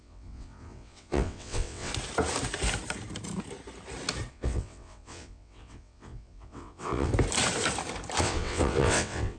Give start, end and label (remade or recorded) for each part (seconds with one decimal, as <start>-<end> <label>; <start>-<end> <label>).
0.0-1.9 remade; 1.9-4.3 recorded; 4.3-7.1 remade; 7.1-8.2 recorded; 8.2-9.4 remade